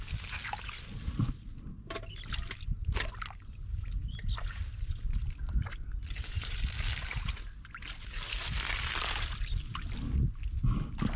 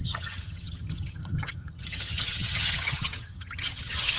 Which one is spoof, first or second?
second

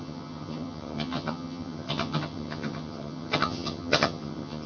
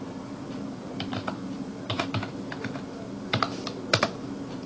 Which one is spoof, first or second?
first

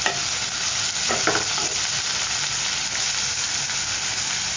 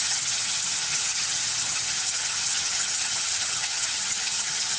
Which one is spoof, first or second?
second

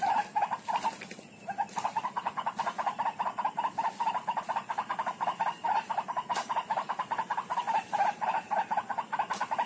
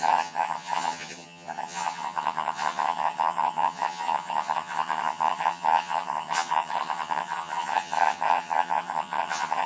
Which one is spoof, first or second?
second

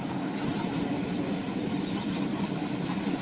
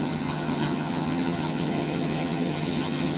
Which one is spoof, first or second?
second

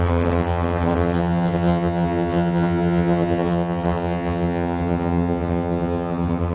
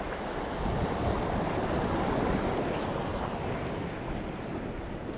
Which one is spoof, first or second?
first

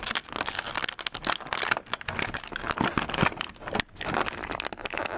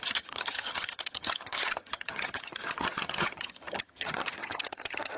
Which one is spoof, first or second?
second